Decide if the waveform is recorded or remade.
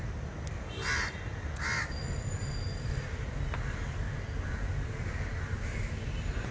recorded